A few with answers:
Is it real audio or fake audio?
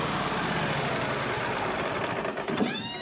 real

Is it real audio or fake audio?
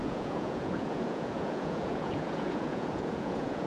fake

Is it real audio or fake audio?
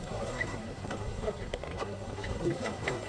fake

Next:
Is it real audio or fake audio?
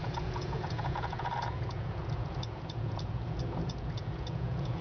fake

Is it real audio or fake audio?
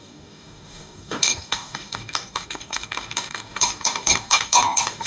fake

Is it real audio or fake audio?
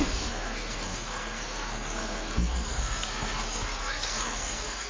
fake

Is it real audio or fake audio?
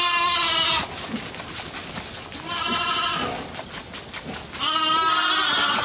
real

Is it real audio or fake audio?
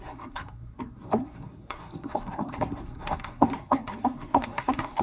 fake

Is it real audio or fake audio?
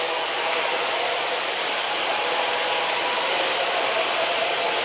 real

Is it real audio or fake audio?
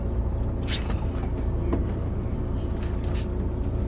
real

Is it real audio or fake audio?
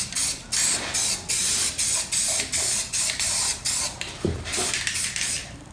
real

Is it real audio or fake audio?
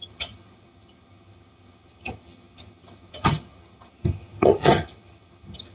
fake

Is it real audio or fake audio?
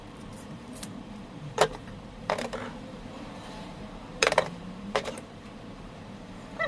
fake